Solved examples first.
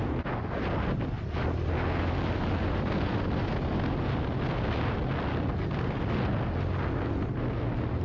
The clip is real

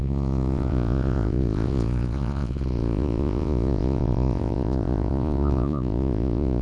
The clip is fake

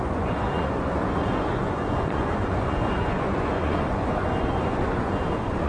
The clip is fake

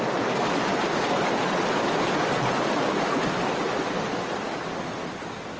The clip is real